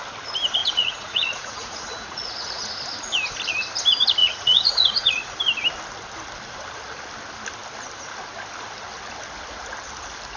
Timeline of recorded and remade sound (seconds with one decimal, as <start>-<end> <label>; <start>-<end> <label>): 0.0-0.6 recorded; 0.6-2.7 remade; 2.7-4.2 recorded; 4.2-5.3 remade; 5.3-10.4 recorded

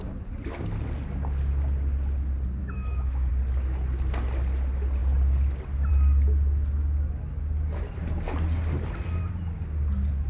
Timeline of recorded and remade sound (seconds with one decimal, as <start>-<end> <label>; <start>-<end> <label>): 0.0-2.6 recorded; 2.6-3.3 remade; 3.3-10.3 recorded